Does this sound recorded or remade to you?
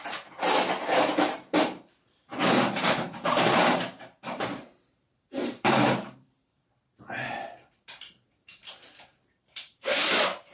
remade